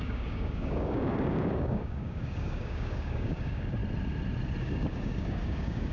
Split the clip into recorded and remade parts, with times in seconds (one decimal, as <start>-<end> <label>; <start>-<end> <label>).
0.0-3.8 remade; 3.8-4.6 recorded; 4.6-5.9 remade